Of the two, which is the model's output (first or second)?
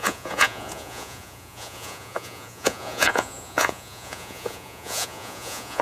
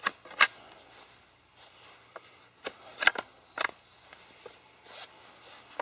first